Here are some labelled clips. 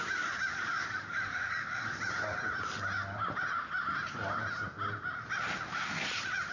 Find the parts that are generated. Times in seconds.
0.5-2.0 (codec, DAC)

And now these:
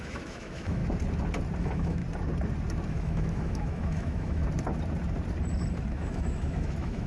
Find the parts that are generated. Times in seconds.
0.0-0.8 (autoencoder, DAC-VAE); 1.6-2.0; 2.9-4.4; 5.9-7.1

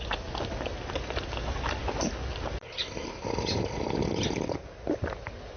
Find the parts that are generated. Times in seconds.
none

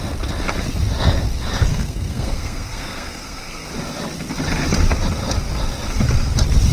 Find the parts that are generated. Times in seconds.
1.7-3.7 (codec, SNAC)